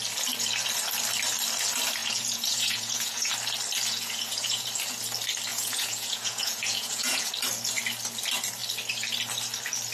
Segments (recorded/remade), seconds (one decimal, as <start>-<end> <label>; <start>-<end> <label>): 0.0-2.0 recorded; 2.0-3.3 remade; 3.3-3.9 recorded; 3.9-4.7 remade; 4.7-5.5 recorded; 5.5-7.3 remade; 7.3-9.9 recorded